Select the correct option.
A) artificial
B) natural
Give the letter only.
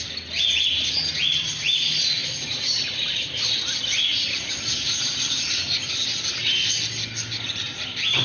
B